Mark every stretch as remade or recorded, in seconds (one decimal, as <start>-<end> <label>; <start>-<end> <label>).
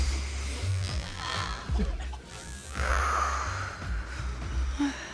0.0-0.7 recorded; 0.7-1.6 remade; 1.6-2.3 recorded; 2.3-3.0 remade; 3.0-5.1 recorded